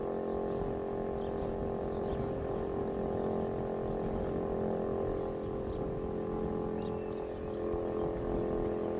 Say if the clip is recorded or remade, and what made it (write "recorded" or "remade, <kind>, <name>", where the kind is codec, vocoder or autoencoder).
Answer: recorded